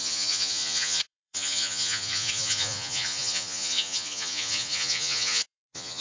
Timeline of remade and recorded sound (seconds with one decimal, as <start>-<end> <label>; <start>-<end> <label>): 0.0-6.0 remade

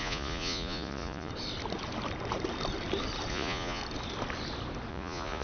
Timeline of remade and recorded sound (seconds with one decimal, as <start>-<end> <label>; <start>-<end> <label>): 0.0-1.3 remade; 1.3-3.3 recorded; 3.3-3.8 remade; 3.8-4.9 recorded; 4.9-5.4 remade

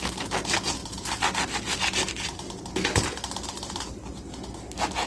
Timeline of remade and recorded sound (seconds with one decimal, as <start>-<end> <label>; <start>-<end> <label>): 0.0-5.1 recorded

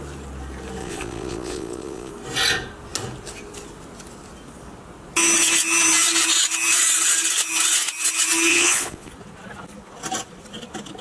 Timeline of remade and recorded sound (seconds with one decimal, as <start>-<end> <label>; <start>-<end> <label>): 0.0-0.8 recorded; 0.8-2.1 remade; 2.1-8.5 recorded; 8.5-9.1 remade; 9.1-11.0 recorded

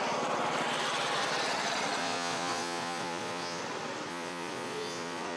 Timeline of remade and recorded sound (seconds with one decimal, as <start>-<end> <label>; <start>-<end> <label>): 0.0-2.0 recorded; 2.0-3.6 remade; 3.6-4.1 recorded; 4.1-5.4 remade

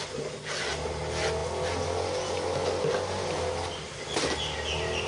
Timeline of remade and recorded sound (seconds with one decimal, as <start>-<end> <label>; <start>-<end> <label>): 0.0-5.1 recorded

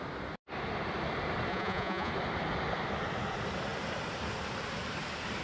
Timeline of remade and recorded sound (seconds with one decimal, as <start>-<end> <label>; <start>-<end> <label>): 0.0-1.5 recorded; 1.5-2.1 remade; 2.1-5.4 recorded